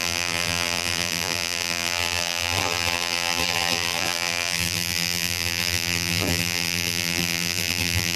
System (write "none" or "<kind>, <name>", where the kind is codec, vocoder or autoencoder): vocoder, BigVGAN v2